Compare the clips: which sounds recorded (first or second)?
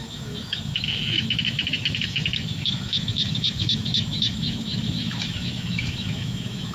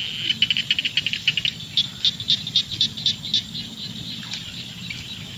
second